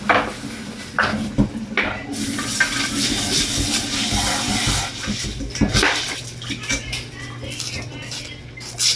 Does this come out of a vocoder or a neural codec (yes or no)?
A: no